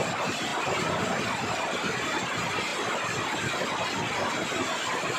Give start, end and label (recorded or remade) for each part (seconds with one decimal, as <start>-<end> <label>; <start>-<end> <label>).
0.0-0.5 recorded; 0.5-1.0 remade; 1.0-5.2 recorded